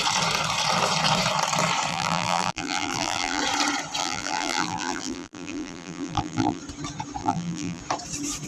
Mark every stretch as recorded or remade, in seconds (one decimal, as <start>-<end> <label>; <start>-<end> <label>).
0.0-1.9 recorded; 1.9-3.4 remade; 3.4-4.0 recorded; 4.0-6.6 remade; 6.6-7.2 recorded; 7.2-7.8 remade; 7.8-8.5 recorded